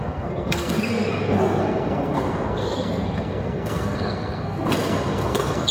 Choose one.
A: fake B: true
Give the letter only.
A